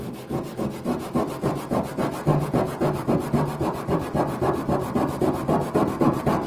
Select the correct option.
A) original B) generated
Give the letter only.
A